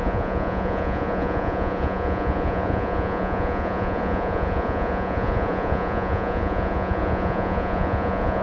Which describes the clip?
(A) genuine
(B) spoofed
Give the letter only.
B